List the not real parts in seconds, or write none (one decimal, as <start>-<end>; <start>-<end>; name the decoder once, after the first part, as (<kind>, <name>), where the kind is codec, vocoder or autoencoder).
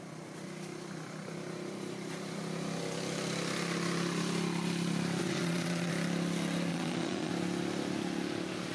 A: 5.2-5.9 (vocoder, Vocos); 6.7-7.3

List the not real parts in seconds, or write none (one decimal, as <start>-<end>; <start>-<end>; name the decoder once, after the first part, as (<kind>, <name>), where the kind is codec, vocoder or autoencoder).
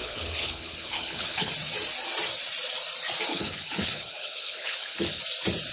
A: 0.0-1.5 (codec, HILCodec); 3.3-5.2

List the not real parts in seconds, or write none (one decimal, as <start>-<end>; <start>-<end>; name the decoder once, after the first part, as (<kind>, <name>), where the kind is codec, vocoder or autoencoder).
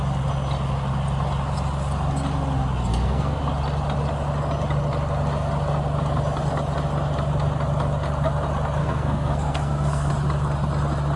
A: 2.9-3.4 (codec, SNAC); 8.8-10.1